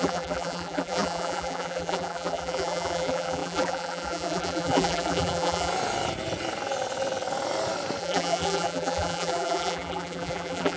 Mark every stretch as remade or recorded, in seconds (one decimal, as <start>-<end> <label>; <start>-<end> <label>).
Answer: 0.0-5.7 remade; 5.7-8.0 recorded; 8.0-10.8 remade